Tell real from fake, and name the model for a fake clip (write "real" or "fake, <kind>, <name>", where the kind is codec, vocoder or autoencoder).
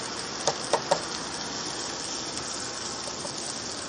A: real